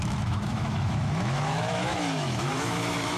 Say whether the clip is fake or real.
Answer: fake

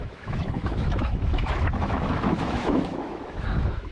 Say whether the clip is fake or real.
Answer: fake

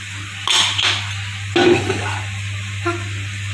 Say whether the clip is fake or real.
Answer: real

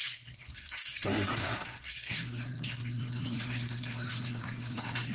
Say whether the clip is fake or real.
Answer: fake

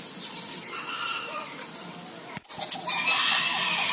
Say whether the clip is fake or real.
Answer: real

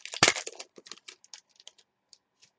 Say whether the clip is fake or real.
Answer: real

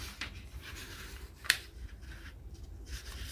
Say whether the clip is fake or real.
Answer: fake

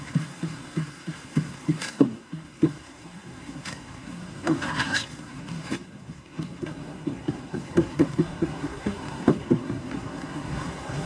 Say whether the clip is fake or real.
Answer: fake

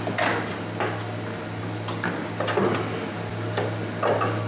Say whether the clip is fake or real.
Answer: real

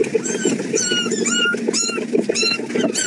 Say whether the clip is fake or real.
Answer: real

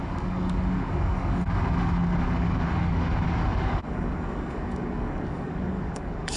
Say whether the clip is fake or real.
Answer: fake